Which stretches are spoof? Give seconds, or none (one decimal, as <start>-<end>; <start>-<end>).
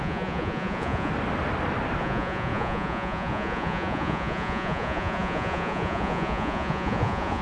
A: 0.0-1.1; 2.0-7.4